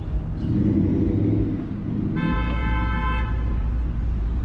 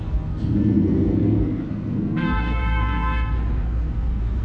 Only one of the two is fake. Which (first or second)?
second